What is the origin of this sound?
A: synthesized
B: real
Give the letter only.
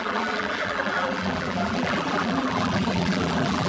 A